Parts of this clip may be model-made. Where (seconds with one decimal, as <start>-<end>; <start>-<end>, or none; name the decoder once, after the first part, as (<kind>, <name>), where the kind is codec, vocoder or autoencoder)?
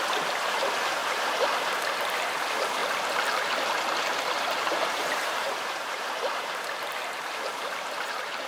0.0-2.8 (vocoder, BigVGAN v2); 4.0-8.5